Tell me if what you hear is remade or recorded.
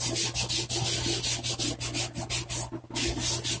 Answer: recorded